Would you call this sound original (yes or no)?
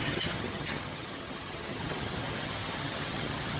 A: no